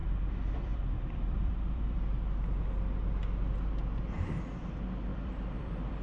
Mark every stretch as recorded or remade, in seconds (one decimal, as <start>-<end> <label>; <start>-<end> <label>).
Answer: 0.0-2.0 remade; 2.0-5.1 recorded; 5.1-6.0 remade

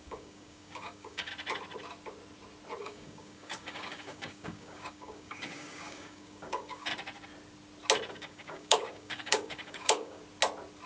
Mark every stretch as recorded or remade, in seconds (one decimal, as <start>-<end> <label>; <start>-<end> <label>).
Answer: 0.0-1.3 remade; 1.3-2.8 recorded; 2.8-6.9 remade; 6.9-8.1 recorded; 8.1-10.2 remade; 10.2-10.9 recorded

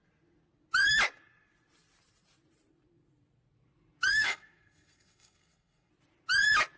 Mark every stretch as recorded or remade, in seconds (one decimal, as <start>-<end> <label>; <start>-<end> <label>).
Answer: 0.0-4.1 recorded; 4.1-5.9 remade; 5.9-6.8 recorded